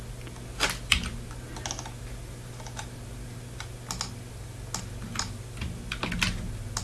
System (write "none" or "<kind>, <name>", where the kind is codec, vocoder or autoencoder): none